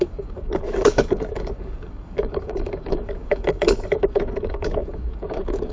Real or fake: fake